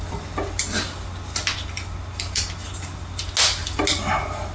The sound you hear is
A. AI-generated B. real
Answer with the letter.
B